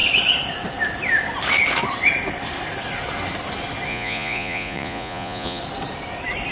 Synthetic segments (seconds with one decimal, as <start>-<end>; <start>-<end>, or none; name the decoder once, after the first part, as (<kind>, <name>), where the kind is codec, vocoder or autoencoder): 3.9-5.6 (vocoder, Vocos)